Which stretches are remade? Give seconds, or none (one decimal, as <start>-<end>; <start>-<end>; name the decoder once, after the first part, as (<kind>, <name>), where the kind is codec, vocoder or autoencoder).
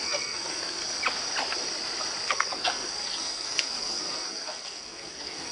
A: 0.0-0.8 (codec, SNAC); 2.3-5.5